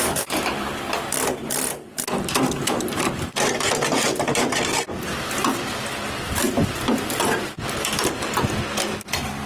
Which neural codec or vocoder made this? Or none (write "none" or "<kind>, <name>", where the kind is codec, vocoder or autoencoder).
none